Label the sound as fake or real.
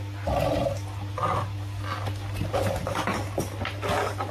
real